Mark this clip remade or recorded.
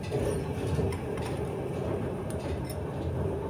recorded